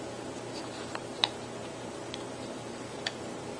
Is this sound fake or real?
real